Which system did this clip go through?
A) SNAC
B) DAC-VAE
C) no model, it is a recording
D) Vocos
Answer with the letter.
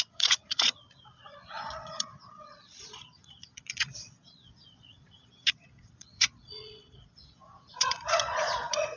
D